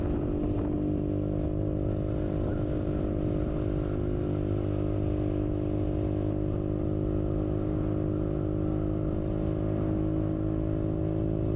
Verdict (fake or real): real